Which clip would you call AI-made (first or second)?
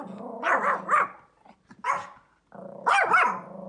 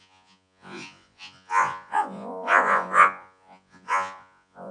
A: second